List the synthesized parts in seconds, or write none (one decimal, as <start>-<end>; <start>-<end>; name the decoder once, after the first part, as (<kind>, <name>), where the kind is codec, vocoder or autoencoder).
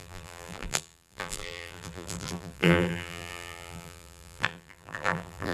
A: 0.0-5.5 (vocoder, BigVGAN v2)